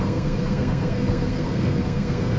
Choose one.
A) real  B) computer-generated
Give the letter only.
B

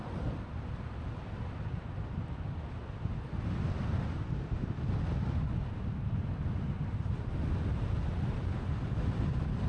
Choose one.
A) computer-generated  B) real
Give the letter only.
B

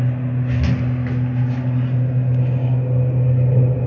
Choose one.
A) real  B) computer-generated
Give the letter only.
A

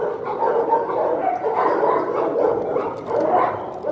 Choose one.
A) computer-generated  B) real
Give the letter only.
B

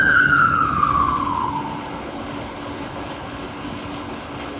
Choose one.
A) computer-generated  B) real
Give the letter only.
A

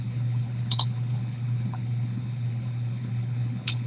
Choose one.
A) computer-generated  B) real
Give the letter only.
A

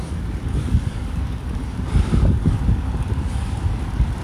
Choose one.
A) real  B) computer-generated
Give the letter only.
B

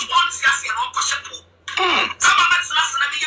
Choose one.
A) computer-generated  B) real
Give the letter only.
A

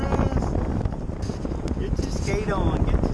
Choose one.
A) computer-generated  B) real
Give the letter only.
B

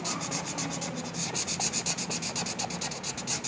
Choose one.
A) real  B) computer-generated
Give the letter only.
A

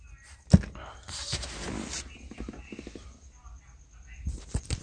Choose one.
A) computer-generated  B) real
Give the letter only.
B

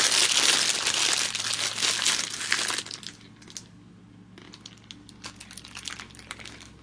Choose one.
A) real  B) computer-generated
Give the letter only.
A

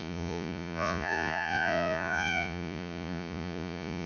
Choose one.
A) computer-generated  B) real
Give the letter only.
A